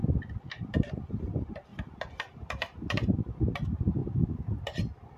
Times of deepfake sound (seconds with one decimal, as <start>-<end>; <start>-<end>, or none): none